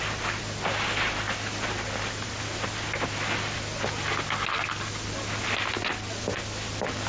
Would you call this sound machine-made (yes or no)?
no